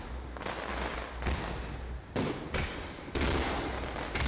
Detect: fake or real real